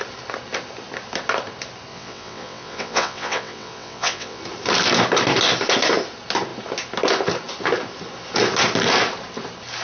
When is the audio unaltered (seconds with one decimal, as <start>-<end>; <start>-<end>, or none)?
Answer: 0.0-1.9; 4.4-9.8